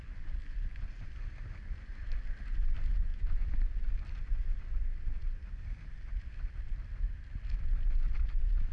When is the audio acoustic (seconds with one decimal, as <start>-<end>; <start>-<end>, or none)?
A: 0.0-8.7